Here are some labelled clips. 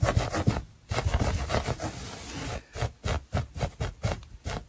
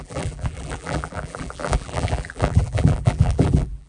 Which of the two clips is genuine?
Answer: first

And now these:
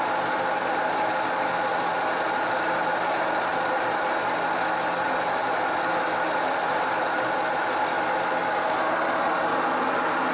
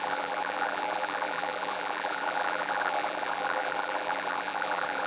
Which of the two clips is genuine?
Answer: first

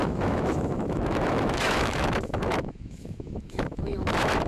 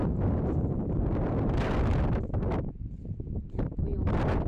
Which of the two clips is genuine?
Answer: second